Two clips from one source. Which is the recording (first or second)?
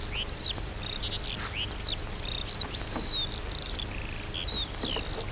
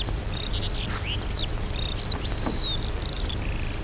first